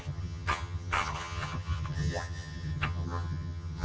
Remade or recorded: remade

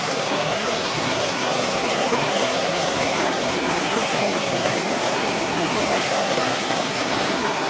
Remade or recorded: remade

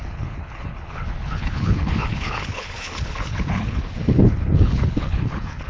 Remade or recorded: remade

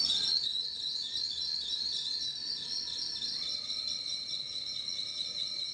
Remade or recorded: remade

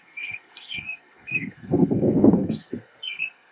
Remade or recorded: remade